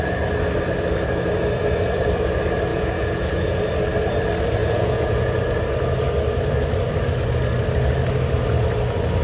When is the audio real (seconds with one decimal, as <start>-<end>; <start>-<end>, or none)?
0.0-2.7; 3.6-4.6; 5.4-9.2